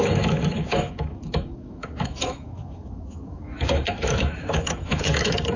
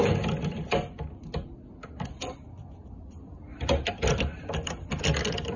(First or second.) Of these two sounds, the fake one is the first